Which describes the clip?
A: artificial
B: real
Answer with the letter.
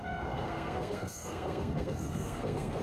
A